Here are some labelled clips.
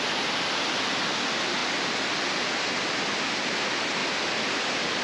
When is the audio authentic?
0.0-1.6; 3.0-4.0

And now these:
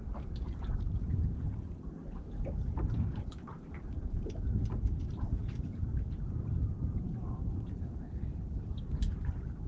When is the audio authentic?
none

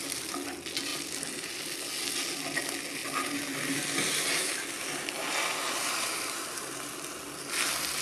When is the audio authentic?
0.0-0.9; 1.6-3.0; 3.6-5.8; 7.1-8.0

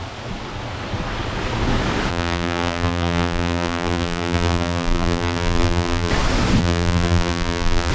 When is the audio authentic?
0.0-2.1; 6.1-6.6